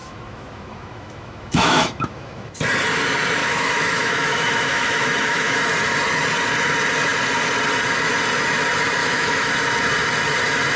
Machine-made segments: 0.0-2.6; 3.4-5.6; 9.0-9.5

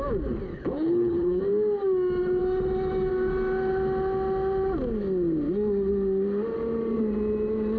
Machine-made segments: 0.5-1.4

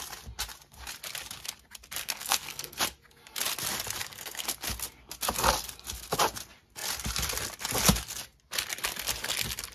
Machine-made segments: 2.0-2.8; 4.0-4.5

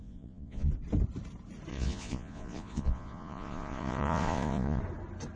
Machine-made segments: 0.0-0.7; 1.7-4.8

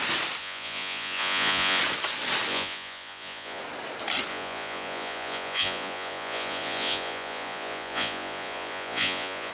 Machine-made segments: 0.4-1.8; 2.5-3.6; 4.3-9.5